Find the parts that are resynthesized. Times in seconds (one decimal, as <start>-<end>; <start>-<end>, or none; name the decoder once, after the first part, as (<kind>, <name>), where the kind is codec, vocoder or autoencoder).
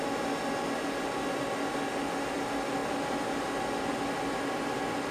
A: none